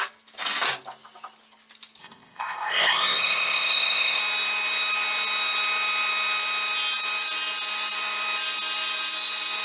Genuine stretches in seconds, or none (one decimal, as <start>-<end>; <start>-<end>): 0.0-2.0; 4.2-9.6